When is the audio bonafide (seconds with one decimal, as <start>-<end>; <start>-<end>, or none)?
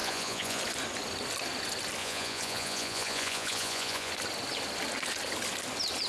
0.6-2.0; 4.1-6.1